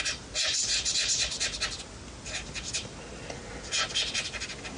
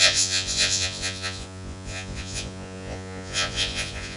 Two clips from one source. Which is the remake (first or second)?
second